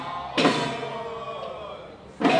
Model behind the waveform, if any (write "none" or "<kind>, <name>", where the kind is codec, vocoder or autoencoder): none